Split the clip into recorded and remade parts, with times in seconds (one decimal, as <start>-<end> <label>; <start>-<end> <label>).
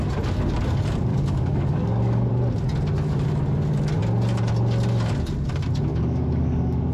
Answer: 0.0-1.1 recorded; 1.1-2.3 remade; 2.3-5.9 recorded; 5.9-6.9 remade